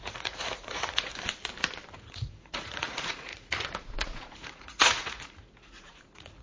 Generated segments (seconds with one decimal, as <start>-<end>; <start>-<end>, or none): 0.0-1.1; 1.9-6.4